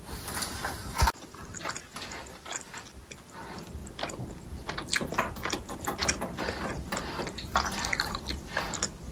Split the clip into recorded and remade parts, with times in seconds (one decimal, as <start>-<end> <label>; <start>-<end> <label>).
0.0-0.8 recorded; 0.8-1.5 remade; 1.5-9.1 recorded

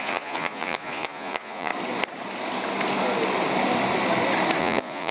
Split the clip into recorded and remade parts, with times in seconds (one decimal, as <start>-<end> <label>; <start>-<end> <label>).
0.0-1.7 remade; 1.7-4.6 recorded; 4.6-5.1 remade